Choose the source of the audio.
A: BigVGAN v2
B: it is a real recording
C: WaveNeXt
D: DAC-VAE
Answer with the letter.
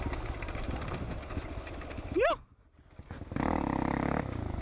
B